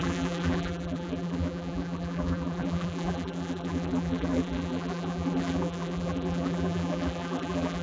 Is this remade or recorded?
remade